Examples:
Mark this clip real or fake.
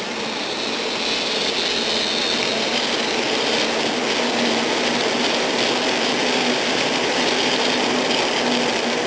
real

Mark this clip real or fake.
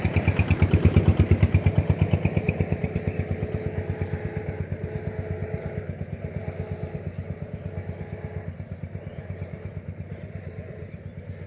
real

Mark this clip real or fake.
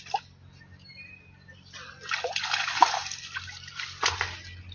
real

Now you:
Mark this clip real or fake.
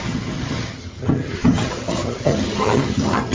fake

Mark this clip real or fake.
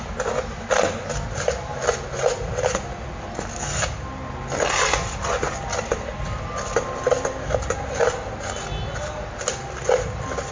real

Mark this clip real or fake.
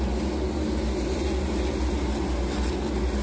real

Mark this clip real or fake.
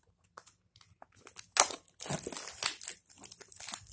real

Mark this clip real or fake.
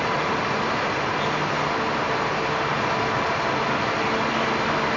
real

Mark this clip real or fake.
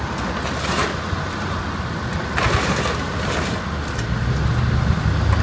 real